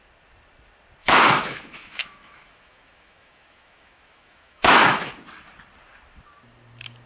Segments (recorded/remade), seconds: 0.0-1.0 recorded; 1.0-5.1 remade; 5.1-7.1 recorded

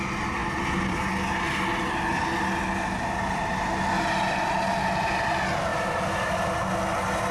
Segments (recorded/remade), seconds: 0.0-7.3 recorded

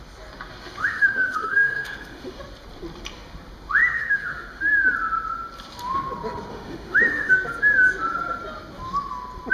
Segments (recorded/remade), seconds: 0.0-0.8 recorded; 0.8-2.4 remade; 2.4-3.8 recorded; 3.8-4.6 remade; 4.6-6.5 recorded; 6.5-7.3 remade; 7.3-9.5 recorded